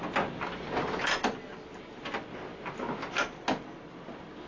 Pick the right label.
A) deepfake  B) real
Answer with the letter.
B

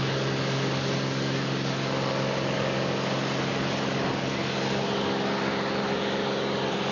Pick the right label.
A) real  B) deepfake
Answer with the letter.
B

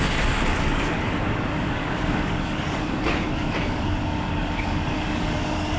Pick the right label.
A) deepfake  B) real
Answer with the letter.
A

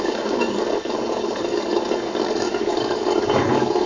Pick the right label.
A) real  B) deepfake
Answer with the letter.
B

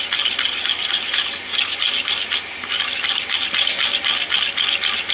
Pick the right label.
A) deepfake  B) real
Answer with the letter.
B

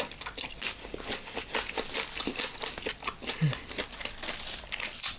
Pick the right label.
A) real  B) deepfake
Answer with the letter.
A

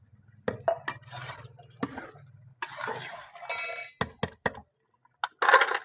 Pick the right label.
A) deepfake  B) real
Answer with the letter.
B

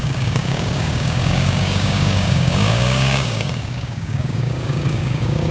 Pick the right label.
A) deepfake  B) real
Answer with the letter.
A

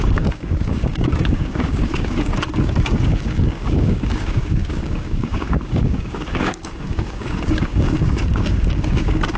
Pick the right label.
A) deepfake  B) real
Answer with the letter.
A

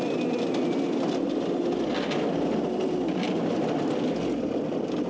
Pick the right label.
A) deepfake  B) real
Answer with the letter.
B